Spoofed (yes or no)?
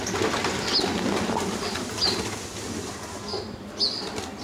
no